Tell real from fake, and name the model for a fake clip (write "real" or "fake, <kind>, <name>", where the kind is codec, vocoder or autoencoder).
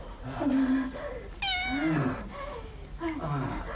real